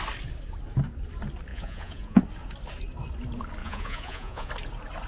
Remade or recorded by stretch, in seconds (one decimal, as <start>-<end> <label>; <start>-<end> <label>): 0.0-1.5 recorded; 1.5-2.2 remade; 2.2-3.6 recorded; 3.6-4.5 remade; 4.5-5.1 recorded